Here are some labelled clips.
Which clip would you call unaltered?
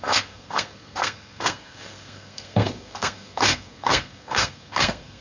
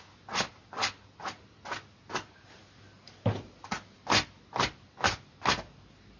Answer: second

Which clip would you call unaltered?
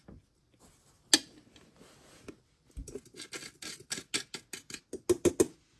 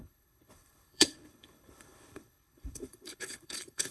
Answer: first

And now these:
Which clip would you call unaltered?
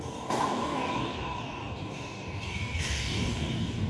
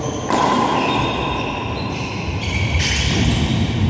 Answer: second